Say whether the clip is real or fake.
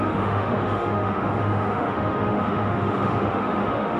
fake